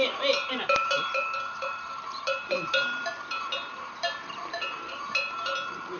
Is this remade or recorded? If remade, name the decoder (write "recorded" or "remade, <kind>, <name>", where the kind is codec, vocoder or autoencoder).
remade, vocoder, BigVGAN v2